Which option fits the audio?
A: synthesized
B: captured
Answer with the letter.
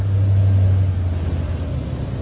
B